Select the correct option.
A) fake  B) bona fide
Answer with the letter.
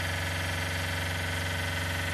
B